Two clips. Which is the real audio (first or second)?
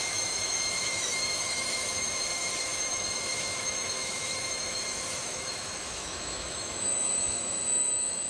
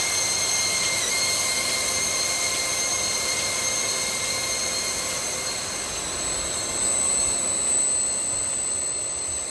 second